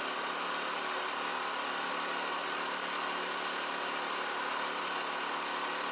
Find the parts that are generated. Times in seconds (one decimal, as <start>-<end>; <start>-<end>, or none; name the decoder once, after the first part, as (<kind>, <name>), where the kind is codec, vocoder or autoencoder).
none